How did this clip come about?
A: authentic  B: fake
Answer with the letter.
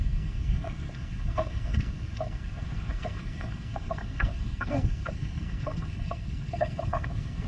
B